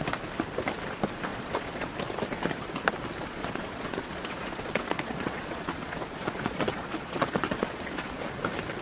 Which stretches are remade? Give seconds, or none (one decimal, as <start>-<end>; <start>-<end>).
1.3-1.9; 3.2-8.2